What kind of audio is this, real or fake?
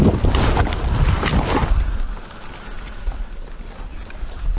real